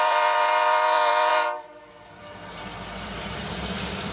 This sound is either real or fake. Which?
fake